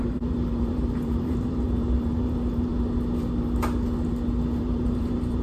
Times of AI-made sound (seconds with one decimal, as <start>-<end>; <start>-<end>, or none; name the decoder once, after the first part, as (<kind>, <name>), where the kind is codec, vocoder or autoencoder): 0.0-2.7 (vocoder, BigVGAN v2); 4.6-5.4